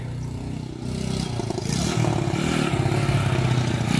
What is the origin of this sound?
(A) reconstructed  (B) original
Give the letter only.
B